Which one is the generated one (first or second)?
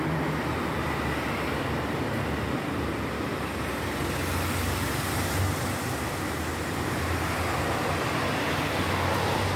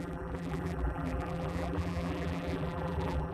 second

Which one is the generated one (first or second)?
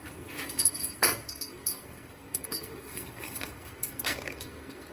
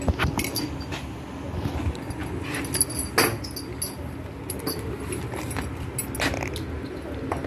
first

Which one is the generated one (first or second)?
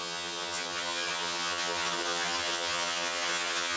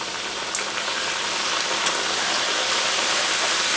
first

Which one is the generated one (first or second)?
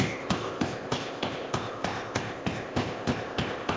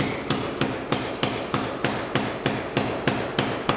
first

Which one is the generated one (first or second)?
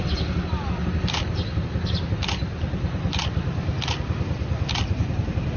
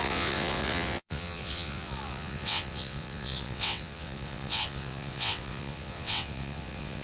second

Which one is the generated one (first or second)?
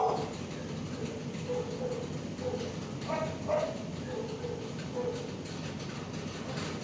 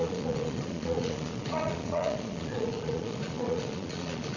second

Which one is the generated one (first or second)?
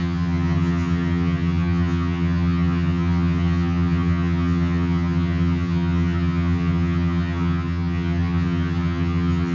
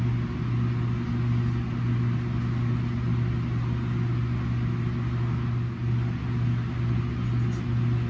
first